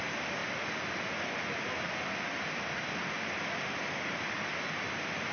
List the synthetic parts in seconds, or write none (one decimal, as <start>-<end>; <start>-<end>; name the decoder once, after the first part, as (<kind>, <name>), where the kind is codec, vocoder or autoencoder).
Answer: 0.4-1.0 (vocoder, BigVGAN v2); 2.3-4.5